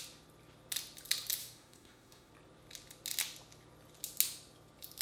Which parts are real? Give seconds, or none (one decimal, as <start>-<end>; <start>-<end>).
0.0-1.4; 2.3-5.0